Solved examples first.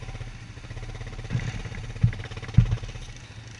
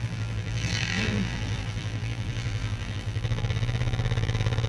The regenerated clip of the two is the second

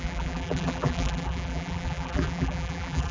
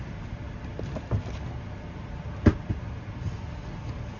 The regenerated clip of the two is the first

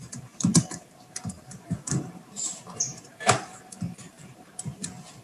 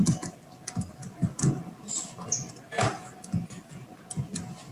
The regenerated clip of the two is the first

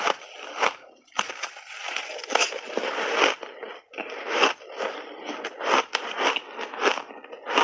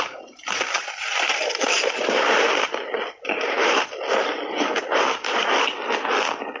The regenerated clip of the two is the second